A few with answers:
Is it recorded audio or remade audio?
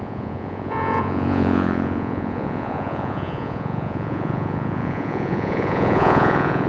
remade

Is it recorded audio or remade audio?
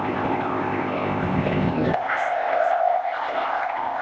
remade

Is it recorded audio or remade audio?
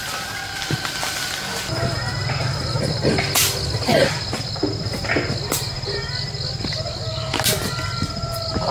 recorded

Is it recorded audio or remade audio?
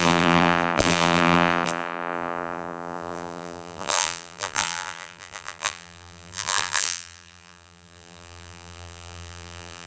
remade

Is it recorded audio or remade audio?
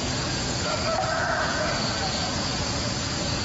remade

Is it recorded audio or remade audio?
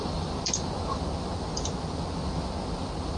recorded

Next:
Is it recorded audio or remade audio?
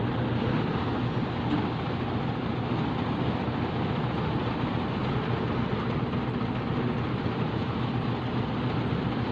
recorded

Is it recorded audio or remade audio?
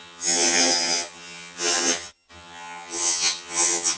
remade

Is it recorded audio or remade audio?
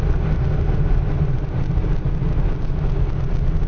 recorded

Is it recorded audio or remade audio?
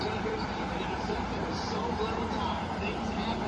remade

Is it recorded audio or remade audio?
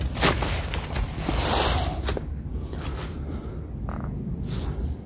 recorded